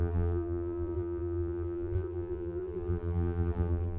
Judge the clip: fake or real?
fake